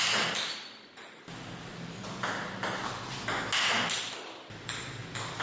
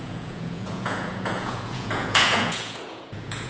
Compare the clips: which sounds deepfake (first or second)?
second